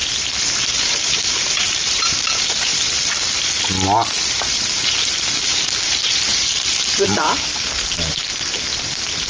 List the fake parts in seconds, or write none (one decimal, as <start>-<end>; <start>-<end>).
0.0-2.7; 4.4-7.5